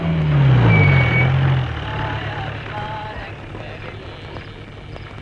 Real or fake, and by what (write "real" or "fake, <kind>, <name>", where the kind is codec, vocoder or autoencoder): real